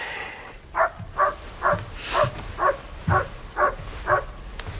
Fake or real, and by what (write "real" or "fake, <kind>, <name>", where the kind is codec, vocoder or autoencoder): real